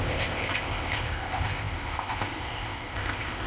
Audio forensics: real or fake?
fake